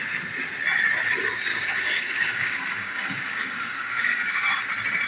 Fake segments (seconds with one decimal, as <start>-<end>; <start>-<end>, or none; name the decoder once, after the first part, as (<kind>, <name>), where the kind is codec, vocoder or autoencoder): 1.5-4.6 (codec, DAC)